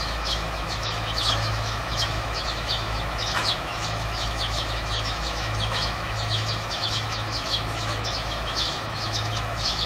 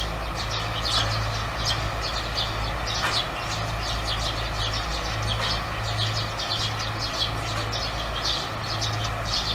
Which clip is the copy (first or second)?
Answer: first